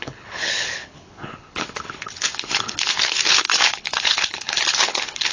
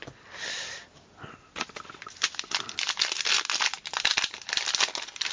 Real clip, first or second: second